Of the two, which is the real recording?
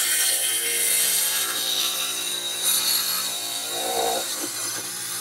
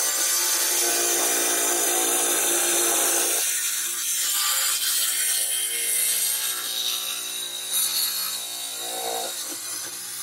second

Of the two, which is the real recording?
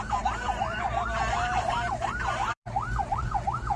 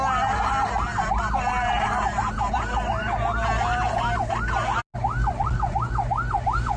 second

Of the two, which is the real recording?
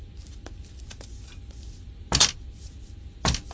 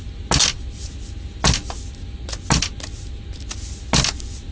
second